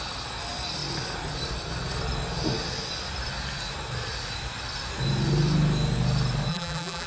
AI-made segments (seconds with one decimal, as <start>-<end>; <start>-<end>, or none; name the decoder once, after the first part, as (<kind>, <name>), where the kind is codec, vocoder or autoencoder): 6.5-7.1 (vocoder, BigVGAN v2)